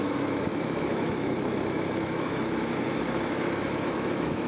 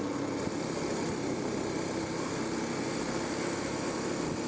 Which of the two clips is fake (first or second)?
first